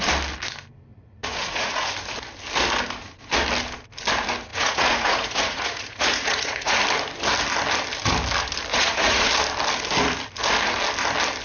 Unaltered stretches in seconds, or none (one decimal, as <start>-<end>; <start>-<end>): 0.0-0.9; 1.9-4.5; 6.8-8.7; 9.3-11.4